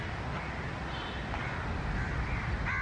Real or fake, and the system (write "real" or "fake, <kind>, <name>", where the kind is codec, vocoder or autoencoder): real